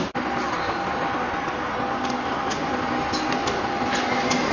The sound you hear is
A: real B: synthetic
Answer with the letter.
A